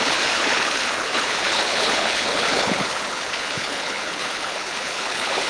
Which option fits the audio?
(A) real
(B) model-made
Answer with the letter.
B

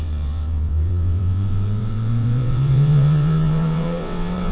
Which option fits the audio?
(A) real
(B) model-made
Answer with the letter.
B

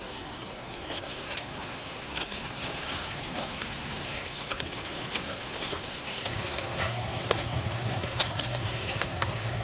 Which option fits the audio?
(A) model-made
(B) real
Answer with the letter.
A